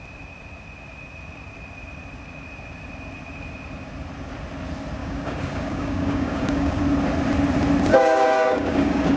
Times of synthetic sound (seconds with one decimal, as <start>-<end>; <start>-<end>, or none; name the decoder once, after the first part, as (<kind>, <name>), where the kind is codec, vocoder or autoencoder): 5.0-6.8 (codec, DAC); 7.9-9.2